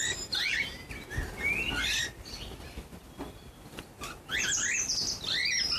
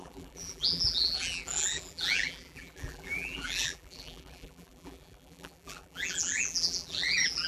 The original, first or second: first